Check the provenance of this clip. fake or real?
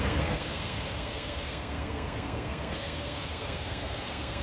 fake